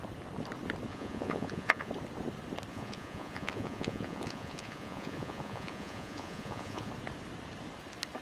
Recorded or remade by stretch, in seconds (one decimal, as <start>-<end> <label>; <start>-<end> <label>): 0.0-0.9 recorded; 0.9-1.9 remade; 1.9-2.7 recorded; 2.7-6.9 remade; 6.9-8.2 recorded